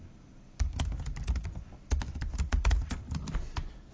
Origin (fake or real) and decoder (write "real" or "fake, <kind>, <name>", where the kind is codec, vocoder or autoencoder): real